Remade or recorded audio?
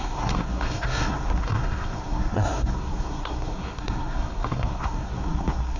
remade